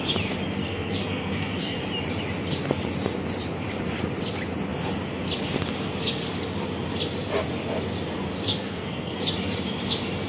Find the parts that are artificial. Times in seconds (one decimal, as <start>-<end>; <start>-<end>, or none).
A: 0.7-1.8; 8.5-9.2